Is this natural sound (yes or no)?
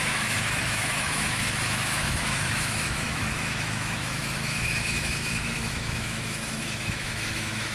no